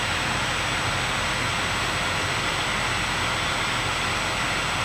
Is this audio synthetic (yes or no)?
no